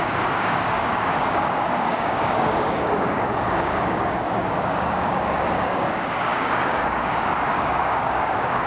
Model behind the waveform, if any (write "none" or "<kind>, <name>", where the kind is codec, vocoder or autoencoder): codec, DAC